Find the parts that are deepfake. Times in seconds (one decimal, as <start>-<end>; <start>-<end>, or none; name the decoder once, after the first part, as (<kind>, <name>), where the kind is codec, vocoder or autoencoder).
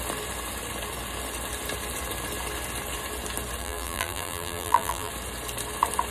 3.6-5.1 (vocoder, BigVGAN v2)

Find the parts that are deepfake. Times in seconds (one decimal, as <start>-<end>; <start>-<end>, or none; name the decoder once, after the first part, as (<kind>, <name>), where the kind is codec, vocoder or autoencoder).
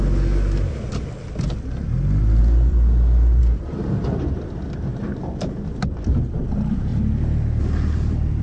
2.4-3.4 (vocoder, BigVGAN v2); 4.9-6.5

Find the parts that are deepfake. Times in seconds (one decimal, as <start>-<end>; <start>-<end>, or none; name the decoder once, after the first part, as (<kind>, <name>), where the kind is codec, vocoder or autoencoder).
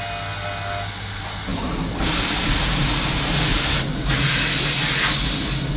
1.5-2.1 (vocoder, BigVGAN v2); 3.5-4.2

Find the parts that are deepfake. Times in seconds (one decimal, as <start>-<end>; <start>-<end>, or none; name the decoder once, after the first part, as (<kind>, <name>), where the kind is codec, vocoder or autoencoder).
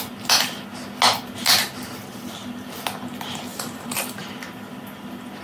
3.5-4.1 (vocoder, BigVGAN v2)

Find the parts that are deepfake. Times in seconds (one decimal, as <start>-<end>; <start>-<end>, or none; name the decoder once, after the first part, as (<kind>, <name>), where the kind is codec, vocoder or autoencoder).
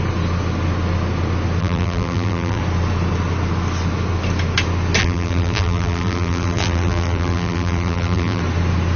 1.6-2.6 (vocoder, BigVGAN v2); 5.0-8.4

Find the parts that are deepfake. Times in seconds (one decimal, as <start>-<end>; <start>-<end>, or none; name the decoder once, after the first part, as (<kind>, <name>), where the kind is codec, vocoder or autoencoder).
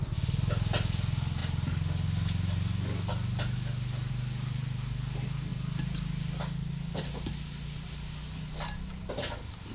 none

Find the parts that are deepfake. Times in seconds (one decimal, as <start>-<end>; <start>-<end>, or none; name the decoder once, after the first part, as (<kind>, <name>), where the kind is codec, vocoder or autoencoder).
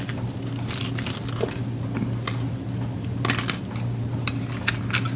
4.1-4.8 (vocoder, BigVGAN v2)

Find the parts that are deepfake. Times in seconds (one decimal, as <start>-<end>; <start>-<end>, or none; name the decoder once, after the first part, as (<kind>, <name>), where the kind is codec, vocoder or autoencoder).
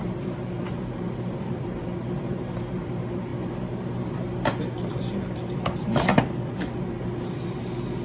0.0-3.3 (vocoder, BigVGAN v2); 4.9-8.0